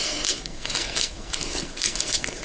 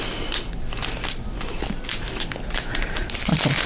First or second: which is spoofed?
first